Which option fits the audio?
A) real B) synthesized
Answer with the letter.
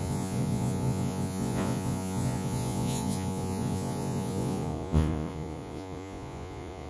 B